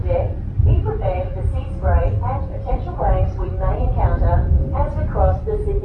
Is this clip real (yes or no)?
no